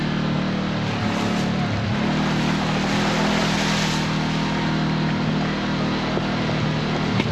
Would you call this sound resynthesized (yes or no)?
no